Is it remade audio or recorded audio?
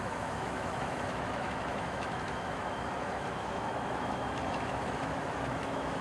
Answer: remade